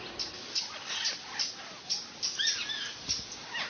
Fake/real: real